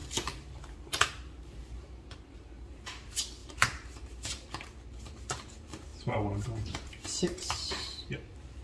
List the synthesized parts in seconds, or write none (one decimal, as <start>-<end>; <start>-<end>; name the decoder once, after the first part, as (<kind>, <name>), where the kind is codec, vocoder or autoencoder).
0.0-8.6 (vocoder, BigVGAN v2)